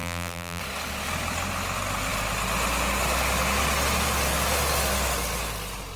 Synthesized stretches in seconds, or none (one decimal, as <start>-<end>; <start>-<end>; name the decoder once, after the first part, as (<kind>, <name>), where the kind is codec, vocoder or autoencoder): 0.0-0.6 (vocoder, BigVGAN v2)